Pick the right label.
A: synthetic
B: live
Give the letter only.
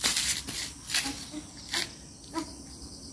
B